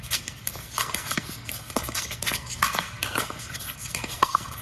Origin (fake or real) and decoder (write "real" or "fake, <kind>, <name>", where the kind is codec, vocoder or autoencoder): fake, codec, SNAC